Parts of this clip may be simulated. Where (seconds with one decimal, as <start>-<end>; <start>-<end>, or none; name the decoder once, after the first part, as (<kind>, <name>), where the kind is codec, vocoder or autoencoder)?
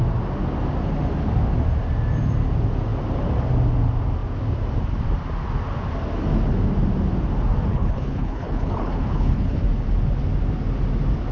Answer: 7.7-9.6 (codec, HILCodec)